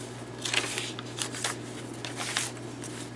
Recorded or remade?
recorded